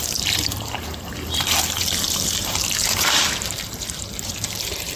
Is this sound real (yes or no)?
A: no